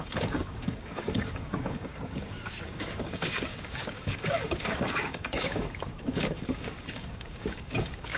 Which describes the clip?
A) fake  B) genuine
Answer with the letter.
A